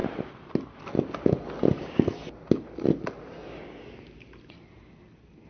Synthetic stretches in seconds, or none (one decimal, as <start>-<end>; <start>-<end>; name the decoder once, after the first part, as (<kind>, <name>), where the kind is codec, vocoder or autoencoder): none